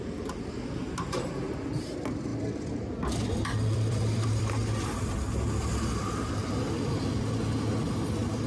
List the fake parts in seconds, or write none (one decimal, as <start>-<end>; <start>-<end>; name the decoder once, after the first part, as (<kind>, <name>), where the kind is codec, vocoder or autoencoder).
2.3-4.5 (vocoder, BigVGAN v2); 6.4-7.2